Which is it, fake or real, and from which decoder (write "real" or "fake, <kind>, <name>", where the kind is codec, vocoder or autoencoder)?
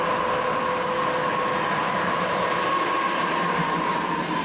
real